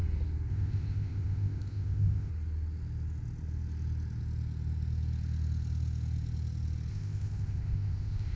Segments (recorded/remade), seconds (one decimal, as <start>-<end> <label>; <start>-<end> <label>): 0.0-0.5 recorded; 0.5-2.3 remade; 2.3-6.9 recorded; 6.9-8.4 remade